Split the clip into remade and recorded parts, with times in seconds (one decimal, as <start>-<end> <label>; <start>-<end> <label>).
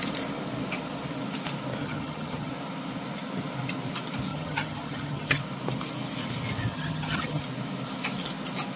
0.0-1.8 recorded; 1.8-2.5 remade; 2.5-4.3 recorded; 4.3-5.4 remade; 5.4-6.7 recorded; 6.7-7.4 remade; 7.4-8.8 recorded